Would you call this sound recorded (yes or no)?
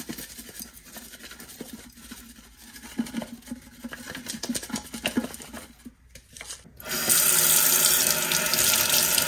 yes